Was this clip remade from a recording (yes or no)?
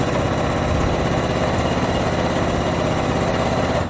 no